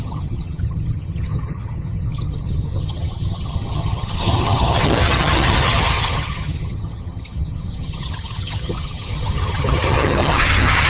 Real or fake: fake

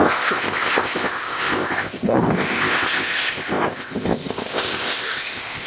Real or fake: fake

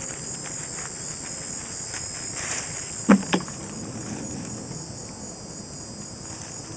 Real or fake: real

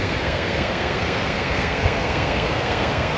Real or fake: fake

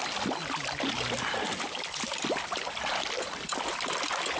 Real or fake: real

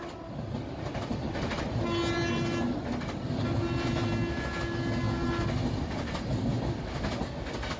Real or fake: real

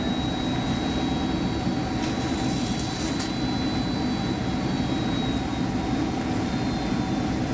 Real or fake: real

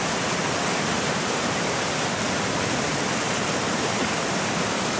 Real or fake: fake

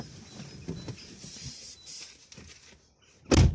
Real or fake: real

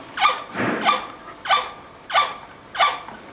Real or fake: real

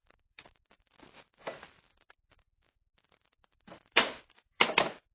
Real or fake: real